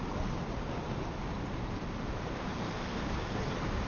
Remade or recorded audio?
remade